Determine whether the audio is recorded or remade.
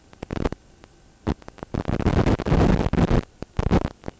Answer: recorded